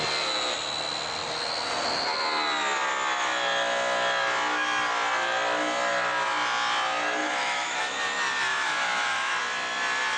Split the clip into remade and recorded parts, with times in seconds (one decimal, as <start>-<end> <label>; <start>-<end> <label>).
0.0-7.2 recorded; 7.2-7.8 remade; 7.8-8.5 recorded; 8.5-9.4 remade; 9.4-10.2 recorded